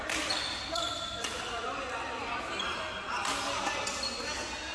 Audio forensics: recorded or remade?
recorded